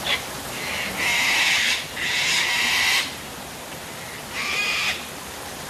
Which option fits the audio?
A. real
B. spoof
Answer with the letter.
A